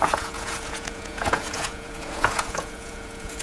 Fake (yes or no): yes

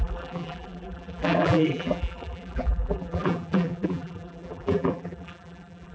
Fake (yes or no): yes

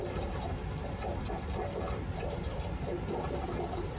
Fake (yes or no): yes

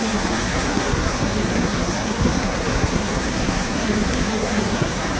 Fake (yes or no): yes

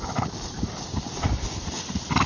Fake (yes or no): no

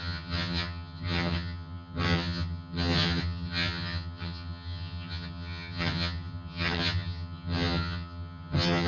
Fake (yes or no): yes